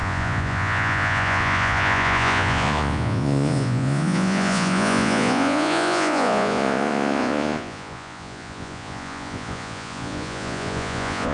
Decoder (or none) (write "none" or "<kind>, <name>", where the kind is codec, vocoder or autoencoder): vocoder, Vocos